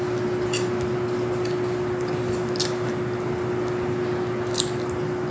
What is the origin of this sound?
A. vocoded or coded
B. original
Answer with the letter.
B